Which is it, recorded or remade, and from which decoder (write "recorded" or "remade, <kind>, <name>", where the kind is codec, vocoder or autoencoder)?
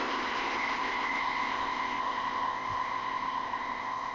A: remade, codec, ZipCodec